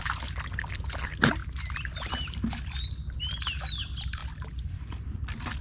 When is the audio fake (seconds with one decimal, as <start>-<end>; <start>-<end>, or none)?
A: 1.4-2.4; 4.2-5.6